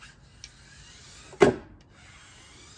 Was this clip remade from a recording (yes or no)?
no